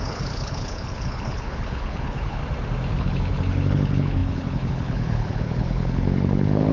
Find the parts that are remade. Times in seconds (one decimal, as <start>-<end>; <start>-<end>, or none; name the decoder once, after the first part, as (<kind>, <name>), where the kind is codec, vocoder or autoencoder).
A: 0.0-2.4 (codec, HILCodec); 2.9-6.7

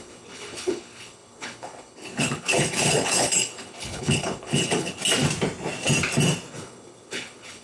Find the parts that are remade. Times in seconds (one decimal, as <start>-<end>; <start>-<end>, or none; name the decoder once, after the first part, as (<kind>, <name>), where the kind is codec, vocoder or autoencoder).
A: 0.0-5.0 (codec, HILCodec); 6.5-7.6

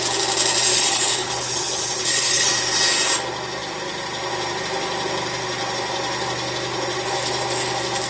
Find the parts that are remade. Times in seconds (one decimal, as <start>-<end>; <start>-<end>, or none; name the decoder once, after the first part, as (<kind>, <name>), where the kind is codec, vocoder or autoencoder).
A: 0.7-2.5 (codec, HILCodec)

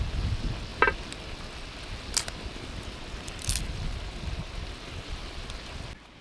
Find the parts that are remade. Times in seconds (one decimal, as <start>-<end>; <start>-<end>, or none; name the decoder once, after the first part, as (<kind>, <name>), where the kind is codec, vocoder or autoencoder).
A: none

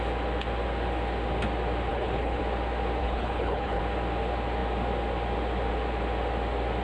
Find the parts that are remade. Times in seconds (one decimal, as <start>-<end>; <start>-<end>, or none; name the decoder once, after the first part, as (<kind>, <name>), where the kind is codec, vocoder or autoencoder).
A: 1.9-2.4 (codec, HILCodec); 3.0-3.8

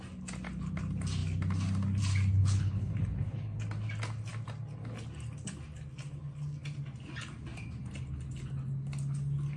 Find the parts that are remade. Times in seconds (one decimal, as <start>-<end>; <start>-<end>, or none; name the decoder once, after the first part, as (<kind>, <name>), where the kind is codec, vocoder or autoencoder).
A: 2.4-3.6 (codec, HILCodec)

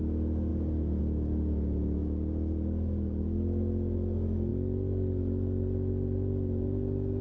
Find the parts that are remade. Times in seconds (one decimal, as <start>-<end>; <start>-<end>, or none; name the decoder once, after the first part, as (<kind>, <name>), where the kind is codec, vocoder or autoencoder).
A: none